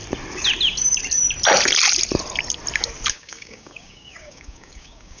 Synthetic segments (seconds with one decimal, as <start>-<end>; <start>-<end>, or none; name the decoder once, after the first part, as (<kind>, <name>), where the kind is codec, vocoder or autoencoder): 3.1-5.2 (codec, DAC)